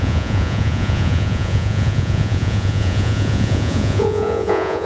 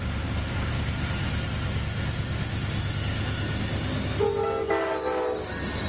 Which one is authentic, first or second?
second